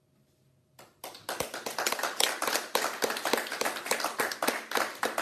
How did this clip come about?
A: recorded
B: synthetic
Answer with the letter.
A